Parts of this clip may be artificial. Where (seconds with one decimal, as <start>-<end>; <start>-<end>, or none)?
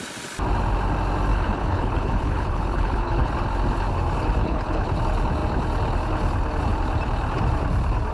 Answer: 1.3-3.3; 4.4-5.0